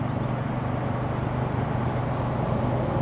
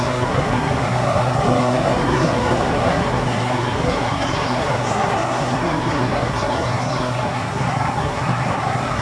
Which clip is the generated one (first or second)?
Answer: second